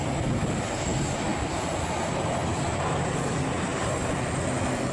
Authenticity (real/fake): real